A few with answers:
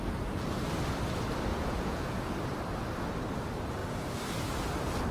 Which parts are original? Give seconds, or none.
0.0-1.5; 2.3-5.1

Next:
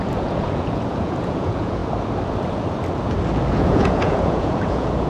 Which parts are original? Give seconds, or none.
1.8-3.5

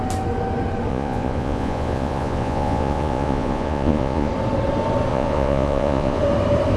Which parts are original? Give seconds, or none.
0.0-0.9; 4.3-5.1; 6.2-6.8

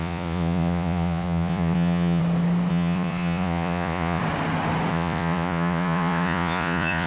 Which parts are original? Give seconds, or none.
2.2-2.7; 4.2-4.9

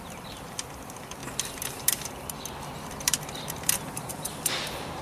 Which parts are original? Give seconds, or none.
0.0-5.0

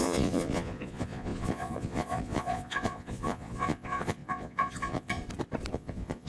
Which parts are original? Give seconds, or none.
5.2-5.7

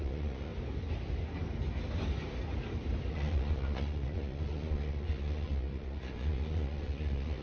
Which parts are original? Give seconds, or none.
0.5-3.1